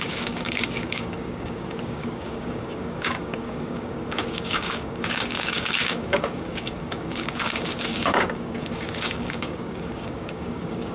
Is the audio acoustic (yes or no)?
no